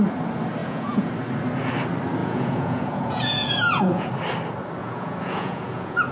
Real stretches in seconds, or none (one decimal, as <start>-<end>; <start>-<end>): 0.0-0.6; 1.1-2.2; 4.1-4.8